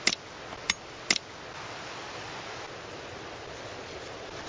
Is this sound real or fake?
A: real